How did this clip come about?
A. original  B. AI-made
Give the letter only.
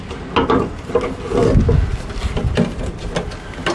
A